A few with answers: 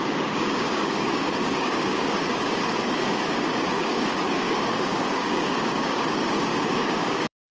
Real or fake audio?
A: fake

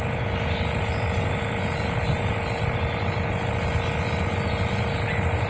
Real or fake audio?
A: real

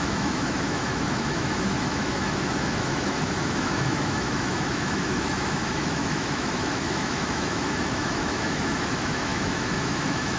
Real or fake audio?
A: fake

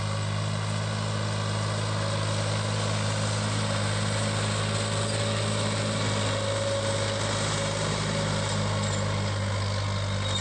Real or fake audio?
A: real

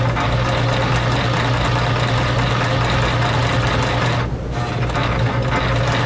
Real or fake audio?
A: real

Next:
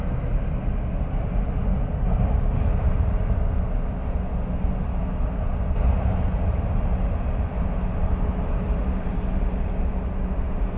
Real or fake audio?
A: real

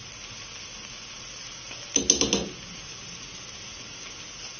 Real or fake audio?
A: real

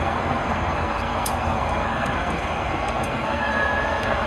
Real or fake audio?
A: fake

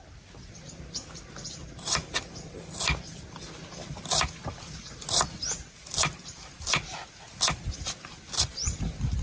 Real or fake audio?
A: real